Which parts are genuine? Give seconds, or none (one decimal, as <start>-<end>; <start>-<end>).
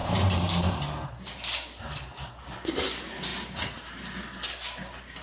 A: 2.3-3.3; 4.0-5.2